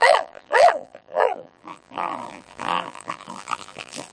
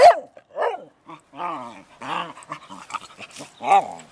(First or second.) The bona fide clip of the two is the second